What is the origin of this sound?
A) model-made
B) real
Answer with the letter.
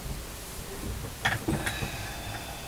B